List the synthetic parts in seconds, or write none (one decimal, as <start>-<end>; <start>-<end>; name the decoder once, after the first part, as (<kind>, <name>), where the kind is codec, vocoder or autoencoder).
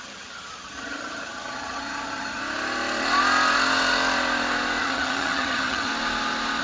0.0-2.4 (vocoder, HiFi-GAN); 4.8-5.9